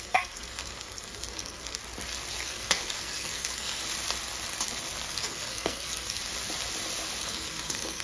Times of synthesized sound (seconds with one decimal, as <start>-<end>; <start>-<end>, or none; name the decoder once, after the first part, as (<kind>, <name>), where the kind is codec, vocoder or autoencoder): 0.0-1.8 (codec, SNAC); 2.4-3.8; 5.1-6.2; 7.2-8.0